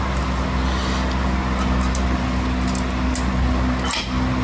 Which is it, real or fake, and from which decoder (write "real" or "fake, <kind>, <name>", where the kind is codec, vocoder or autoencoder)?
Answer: real